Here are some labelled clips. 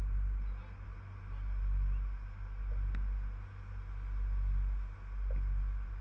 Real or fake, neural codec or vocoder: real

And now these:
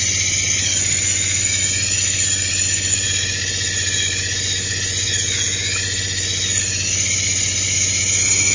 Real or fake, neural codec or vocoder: real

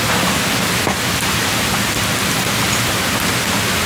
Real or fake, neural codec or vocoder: real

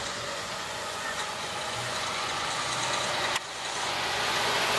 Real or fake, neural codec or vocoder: fake, vocoder, Vocos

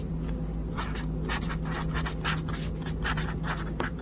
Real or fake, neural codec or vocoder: real